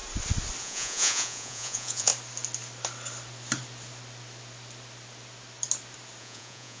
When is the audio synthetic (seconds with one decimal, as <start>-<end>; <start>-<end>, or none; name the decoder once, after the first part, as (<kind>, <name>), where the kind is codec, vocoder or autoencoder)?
0.6-2.1 (vocoder, Vocos); 6.2-6.8